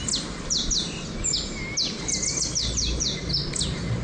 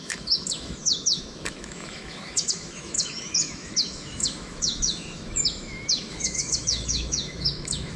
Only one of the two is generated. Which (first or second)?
second